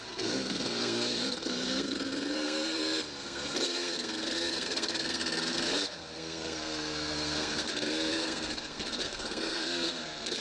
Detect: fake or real fake